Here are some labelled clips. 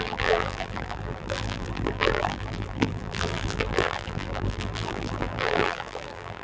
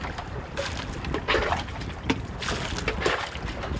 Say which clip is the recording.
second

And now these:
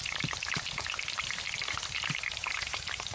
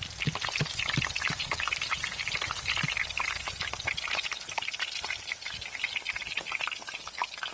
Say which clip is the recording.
second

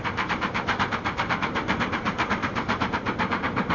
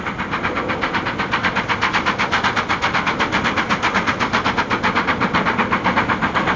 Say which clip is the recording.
second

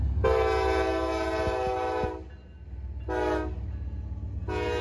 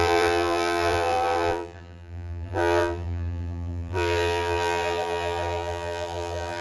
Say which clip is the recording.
first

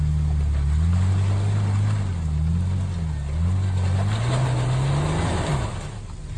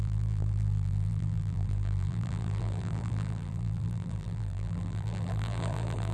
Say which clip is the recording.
first